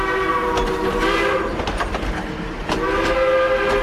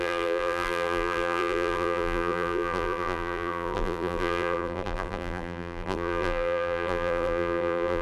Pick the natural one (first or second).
first